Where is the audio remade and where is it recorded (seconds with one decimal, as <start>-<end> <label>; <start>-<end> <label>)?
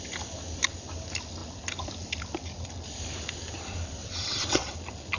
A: 0.0-4.0 recorded; 4.0-4.7 remade; 4.7-5.2 recorded